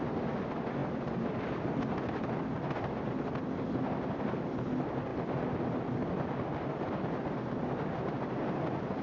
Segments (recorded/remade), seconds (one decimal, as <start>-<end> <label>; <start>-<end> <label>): 0.0-9.0 recorded